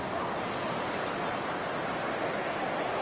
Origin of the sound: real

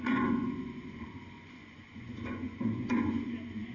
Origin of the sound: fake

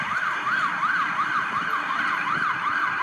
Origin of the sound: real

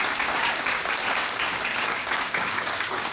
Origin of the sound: fake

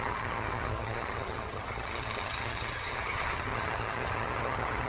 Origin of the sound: fake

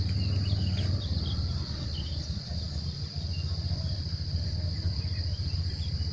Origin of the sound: real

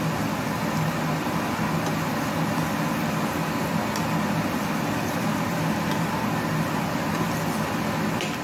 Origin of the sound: real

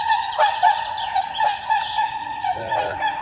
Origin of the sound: fake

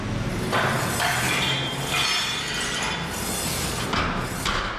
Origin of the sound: real